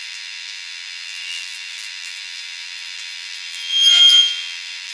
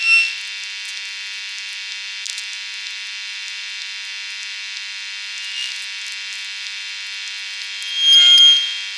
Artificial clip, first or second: first